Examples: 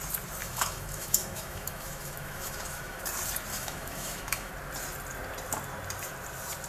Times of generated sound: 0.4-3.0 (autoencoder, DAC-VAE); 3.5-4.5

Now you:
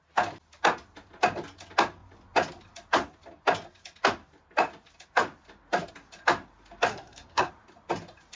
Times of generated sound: 6.9-7.5 (codec, SNAC)

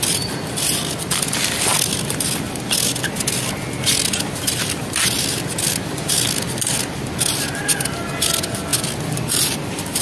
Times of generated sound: none